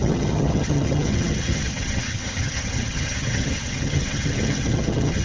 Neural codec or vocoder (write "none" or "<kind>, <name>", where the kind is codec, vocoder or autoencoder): vocoder, HiFi-GAN